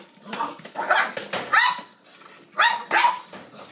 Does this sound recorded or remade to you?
recorded